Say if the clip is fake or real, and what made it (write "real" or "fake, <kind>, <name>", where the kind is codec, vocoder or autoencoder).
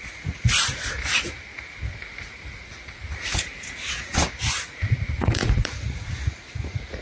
fake, vocoder, Vocos